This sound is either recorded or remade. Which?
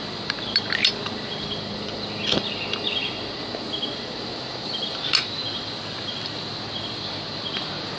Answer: recorded